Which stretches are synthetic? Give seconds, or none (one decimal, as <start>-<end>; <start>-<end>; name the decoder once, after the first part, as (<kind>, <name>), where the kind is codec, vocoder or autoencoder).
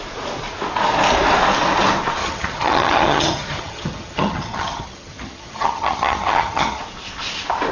2.2-6.8 (vocoder, HiFi-GAN)